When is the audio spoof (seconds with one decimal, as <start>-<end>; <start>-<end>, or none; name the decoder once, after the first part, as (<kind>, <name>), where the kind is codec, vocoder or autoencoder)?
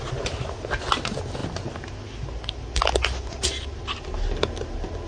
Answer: none